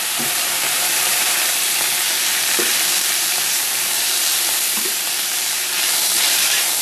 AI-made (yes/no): yes